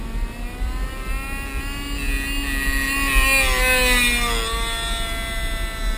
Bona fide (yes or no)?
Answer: yes